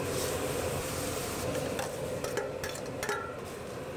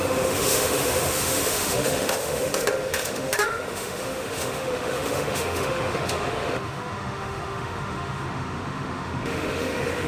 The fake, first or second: second